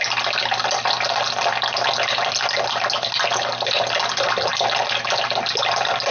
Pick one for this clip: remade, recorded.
recorded